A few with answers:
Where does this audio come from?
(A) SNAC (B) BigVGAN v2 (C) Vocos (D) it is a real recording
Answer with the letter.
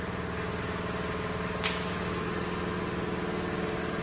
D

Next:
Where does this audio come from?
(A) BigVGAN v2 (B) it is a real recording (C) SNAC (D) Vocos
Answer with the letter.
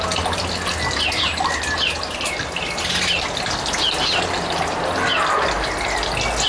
B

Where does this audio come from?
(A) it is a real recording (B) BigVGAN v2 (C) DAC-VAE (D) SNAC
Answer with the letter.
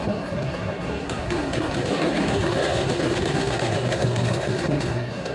D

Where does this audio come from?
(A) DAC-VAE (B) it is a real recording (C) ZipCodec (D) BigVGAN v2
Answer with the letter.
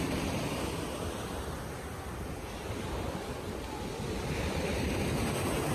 B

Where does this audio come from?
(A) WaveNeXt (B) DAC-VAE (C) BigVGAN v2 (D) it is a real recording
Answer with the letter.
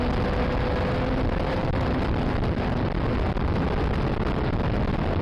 D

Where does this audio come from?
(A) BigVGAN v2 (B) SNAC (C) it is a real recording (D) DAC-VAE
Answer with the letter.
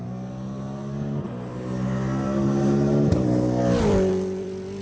C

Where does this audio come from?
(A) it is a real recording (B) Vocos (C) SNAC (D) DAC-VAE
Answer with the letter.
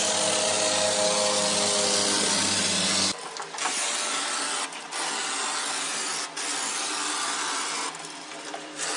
A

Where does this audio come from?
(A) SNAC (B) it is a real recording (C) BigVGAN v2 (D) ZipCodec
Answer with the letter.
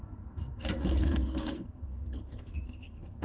A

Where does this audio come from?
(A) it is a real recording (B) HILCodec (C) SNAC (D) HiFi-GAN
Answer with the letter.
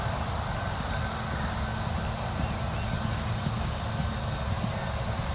A